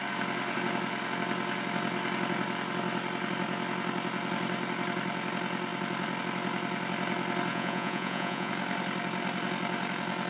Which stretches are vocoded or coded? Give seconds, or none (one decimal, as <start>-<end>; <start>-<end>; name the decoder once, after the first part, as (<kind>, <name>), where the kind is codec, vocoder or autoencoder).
7.5-8.5 (vocoder, Vocos)